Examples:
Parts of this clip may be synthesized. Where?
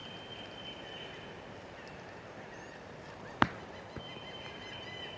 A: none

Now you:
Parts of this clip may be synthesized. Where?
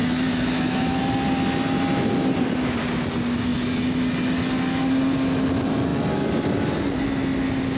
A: 0.0-1.0 (autoencoder, DAC-VAE)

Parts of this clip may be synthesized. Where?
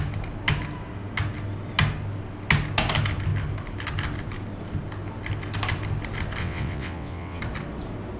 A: 6.4-7.4 (vocoder, WaveNeXt)